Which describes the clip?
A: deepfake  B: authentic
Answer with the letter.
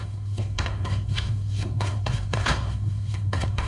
A